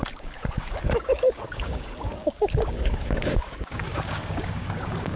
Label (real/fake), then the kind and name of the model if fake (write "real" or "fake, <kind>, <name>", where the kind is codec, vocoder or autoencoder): fake, codec, DAC